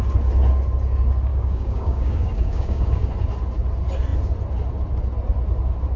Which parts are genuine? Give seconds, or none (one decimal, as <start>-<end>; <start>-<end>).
0.0-1.3; 3.1-6.0